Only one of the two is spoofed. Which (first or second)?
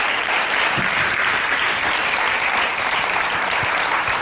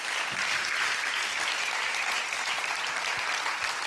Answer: first